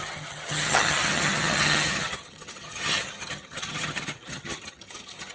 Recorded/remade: remade